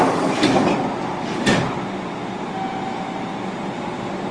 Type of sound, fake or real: real